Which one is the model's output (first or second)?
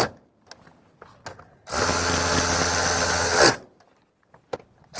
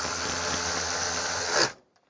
second